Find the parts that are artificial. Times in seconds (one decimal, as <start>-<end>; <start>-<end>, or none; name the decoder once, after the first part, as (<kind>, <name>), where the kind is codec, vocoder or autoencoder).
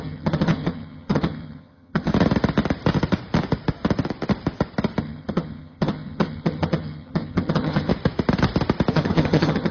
0.0-2.1 (vocoder, HiFi-GAN); 5.0-7.9; 8.9-9.7